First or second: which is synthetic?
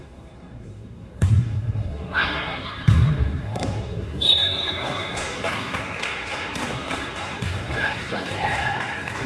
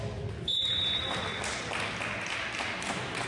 first